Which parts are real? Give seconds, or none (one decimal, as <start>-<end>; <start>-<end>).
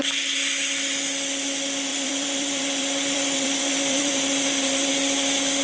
0.0-1.9; 4.9-5.6